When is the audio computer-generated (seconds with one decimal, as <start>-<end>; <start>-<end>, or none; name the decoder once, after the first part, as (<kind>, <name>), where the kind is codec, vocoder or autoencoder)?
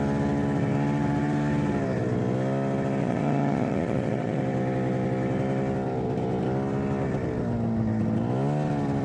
3.0-4.4 (vocoder, Vocos)